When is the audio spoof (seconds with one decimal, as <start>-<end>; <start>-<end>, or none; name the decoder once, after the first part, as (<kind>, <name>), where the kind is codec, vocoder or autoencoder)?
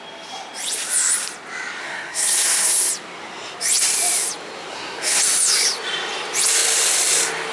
1.8-2.9 (codec, SNAC); 4.7-5.2